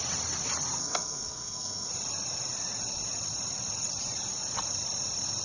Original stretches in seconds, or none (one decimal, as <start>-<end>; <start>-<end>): 0.0-0.8; 1.9-5.4